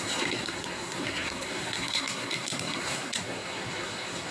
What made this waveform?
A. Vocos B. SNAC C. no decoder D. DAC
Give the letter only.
B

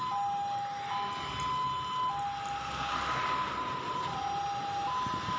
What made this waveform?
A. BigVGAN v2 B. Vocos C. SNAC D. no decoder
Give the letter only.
D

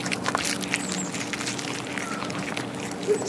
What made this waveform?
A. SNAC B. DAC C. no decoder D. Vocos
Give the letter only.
C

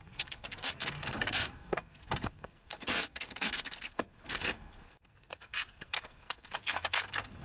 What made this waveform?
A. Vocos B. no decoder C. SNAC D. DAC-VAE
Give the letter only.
C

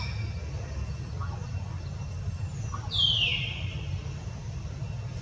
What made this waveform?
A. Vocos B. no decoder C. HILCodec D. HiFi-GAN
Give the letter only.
B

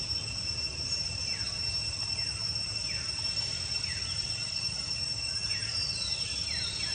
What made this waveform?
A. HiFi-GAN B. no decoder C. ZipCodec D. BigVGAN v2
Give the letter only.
B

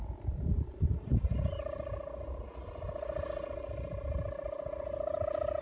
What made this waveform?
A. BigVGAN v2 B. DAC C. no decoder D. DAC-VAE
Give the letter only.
C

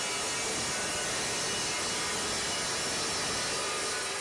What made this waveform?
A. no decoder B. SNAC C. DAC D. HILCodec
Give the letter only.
A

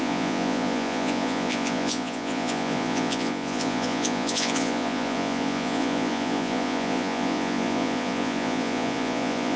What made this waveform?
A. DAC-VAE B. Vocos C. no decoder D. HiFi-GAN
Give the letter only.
B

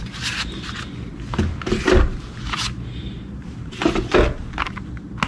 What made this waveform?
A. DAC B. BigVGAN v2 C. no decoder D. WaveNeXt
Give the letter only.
C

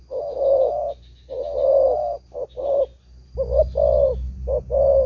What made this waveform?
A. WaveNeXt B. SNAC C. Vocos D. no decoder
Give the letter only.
D